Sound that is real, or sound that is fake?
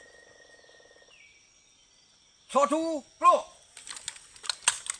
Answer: real